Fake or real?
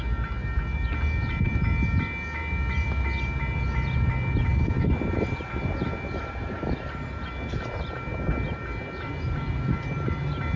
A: real